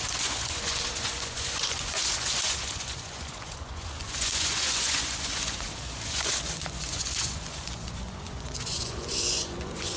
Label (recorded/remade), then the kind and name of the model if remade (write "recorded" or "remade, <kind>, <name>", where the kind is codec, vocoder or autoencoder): remade, vocoder, Vocos